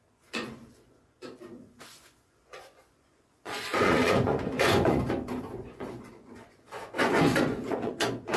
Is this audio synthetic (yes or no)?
yes